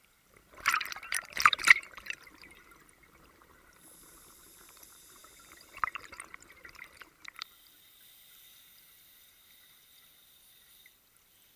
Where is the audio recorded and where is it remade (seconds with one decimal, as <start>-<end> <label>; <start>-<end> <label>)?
0.0-11.6 remade